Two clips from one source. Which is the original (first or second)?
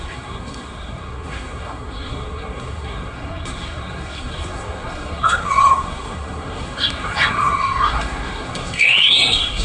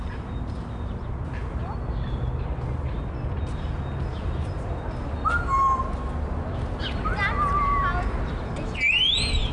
second